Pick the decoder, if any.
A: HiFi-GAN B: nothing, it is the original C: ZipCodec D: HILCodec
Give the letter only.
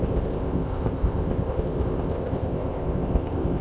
C